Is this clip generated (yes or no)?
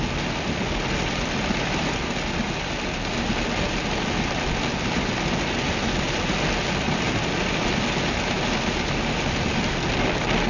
no